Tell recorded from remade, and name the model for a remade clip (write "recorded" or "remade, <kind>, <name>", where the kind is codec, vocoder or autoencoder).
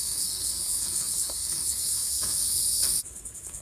remade, codec, SNAC